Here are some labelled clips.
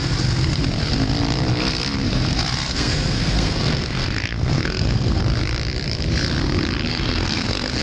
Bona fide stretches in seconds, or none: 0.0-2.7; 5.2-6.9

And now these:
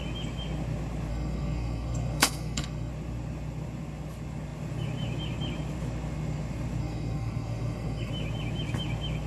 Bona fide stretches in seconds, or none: 0.0-1.1; 2.9-6.8; 8.1-9.3

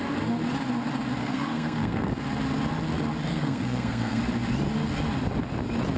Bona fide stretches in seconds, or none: 0.0-1.2; 2.1-3.3; 4.2-6.0

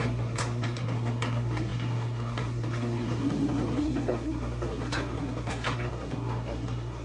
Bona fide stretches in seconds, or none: none

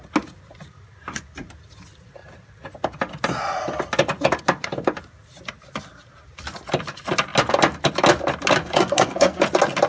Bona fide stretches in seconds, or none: 0.0-8.6; 9.4-9.9

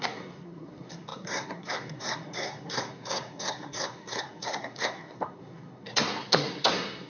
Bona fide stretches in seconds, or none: none